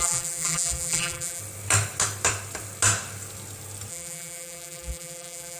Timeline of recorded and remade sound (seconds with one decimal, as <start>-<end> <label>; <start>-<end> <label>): 0.0-1.4 remade; 1.4-3.9 recorded; 3.9-5.6 remade